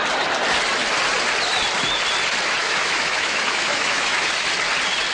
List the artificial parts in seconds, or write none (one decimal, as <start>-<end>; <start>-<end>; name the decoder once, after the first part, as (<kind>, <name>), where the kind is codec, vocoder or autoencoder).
2.6-4.5 (autoencoder, DAC-VAE)